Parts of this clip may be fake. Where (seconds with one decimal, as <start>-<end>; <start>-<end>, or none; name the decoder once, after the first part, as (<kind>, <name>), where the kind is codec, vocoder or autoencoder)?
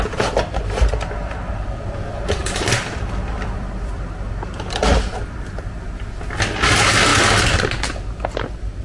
2.4-4.8 (vocoder, BigVGAN v2)